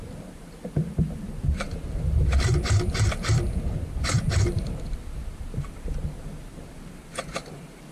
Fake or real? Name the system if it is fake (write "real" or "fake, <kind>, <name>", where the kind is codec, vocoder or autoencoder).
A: fake, vocoder, BigVGAN v2